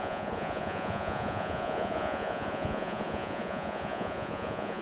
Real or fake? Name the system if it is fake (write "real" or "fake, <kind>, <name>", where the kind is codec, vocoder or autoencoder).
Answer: fake, vocoder, Vocos